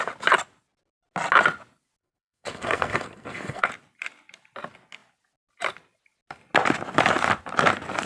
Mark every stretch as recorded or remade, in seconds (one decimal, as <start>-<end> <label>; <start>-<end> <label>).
0.0-2.0 recorded; 2.0-3.7 remade; 3.7-8.1 recorded